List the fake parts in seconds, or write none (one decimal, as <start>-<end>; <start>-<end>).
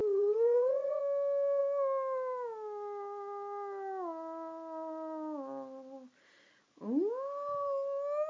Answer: 0.0-1.0